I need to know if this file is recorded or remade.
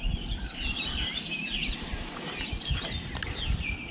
recorded